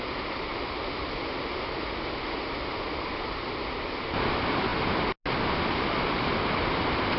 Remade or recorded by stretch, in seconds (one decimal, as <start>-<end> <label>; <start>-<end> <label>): 0.0-7.2 recorded